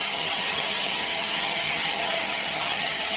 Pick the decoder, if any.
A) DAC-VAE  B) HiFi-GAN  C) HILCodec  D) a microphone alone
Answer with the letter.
B